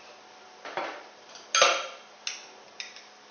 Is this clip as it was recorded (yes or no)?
yes